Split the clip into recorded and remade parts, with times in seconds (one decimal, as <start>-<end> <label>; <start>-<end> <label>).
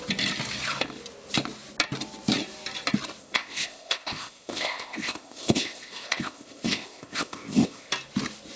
0.0-3.2 recorded; 3.2-7.9 remade; 7.9-8.6 recorded